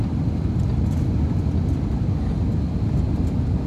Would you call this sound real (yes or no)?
yes